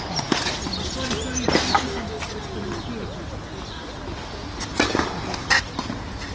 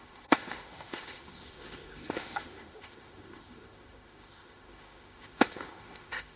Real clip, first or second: first